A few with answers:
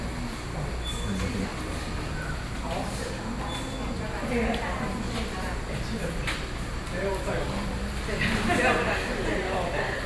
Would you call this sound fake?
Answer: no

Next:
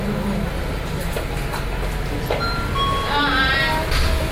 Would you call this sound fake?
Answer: no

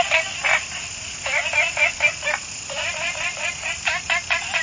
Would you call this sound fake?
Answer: yes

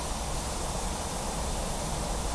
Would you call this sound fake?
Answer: no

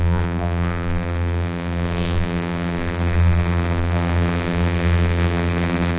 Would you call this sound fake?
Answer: yes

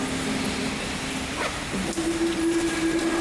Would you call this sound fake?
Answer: no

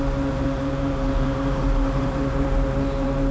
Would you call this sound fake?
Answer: yes